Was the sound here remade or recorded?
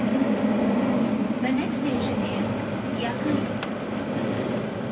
recorded